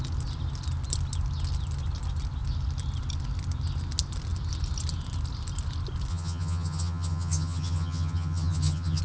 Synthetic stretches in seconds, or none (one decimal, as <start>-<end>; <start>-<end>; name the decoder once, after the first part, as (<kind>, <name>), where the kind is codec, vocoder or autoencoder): 6.1-9.0 (vocoder, HiFi-GAN)